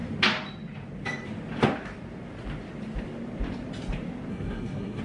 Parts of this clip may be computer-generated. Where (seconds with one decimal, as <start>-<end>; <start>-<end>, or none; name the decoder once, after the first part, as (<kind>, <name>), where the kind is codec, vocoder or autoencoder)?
4.3-5.0 (codec, SNAC)